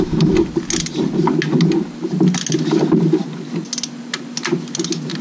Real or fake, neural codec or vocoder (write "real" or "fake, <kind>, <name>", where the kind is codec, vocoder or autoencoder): real